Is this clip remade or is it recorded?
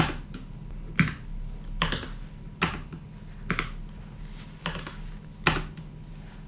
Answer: recorded